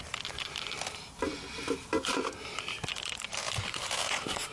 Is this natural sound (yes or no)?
yes